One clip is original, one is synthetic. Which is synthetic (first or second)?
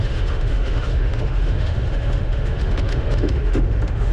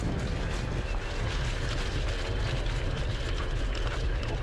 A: first